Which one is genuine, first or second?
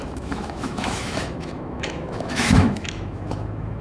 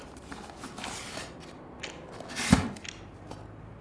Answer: second